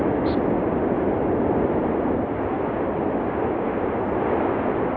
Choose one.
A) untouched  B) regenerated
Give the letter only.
A